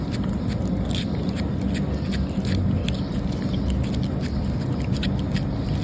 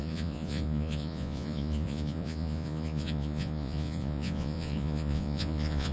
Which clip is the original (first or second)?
first